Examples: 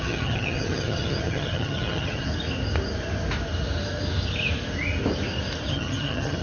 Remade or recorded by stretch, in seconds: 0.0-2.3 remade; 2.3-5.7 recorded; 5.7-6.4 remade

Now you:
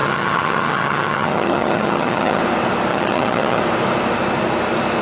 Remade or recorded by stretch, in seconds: 0.0-2.4 remade; 2.4-2.9 recorded; 2.9-3.6 remade; 3.6-5.0 recorded

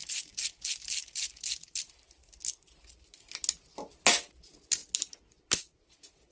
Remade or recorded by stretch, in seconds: 0.0-6.3 recorded

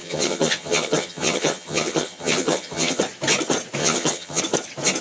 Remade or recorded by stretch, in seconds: 0.0-3.0 remade; 3.0-3.8 recorded; 3.8-4.4 remade; 4.4-5.0 recorded